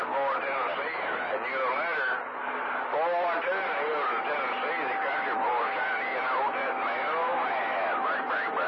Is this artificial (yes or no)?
no